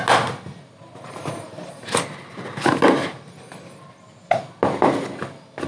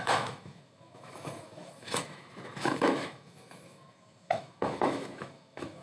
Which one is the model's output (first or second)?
second